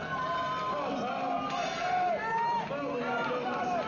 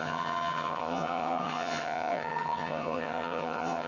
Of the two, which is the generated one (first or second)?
second